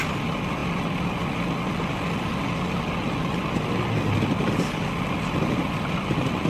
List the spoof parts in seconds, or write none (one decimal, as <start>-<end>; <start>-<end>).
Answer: none